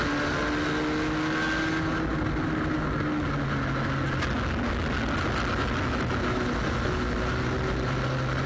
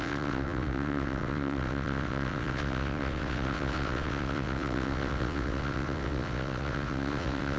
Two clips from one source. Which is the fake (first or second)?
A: second